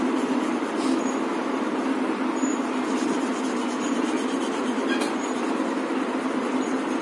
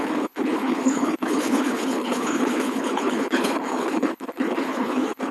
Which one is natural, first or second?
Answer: first